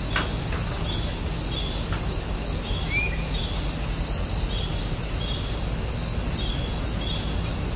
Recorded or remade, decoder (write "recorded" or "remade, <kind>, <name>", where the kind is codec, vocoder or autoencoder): recorded